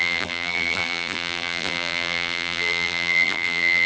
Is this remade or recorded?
remade